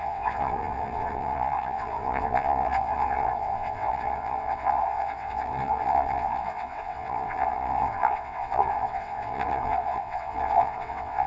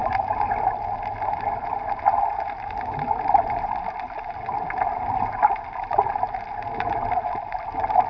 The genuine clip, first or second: second